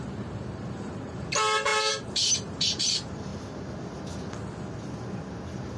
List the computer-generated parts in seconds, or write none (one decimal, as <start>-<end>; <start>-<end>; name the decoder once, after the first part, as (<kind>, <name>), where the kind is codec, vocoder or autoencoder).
0.0-3.3 (vocoder, BigVGAN v2); 5.3-5.8